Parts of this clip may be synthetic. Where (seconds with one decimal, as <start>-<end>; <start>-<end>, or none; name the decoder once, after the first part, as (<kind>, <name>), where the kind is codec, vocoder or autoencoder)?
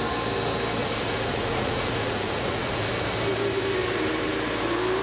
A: 0.8-2.9 (vocoder, Vocos)